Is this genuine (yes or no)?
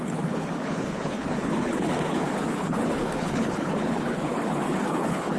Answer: no